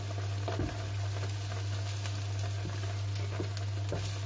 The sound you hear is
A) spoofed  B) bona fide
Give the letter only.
B